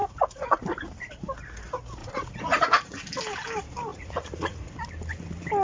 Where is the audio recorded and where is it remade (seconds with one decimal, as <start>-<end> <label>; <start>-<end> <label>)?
0.0-0.6 remade; 0.6-2.0 recorded; 2.0-3.0 remade; 3.0-3.9 recorded; 3.9-4.7 remade; 4.7-5.6 recorded